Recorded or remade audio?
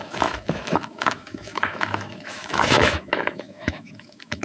remade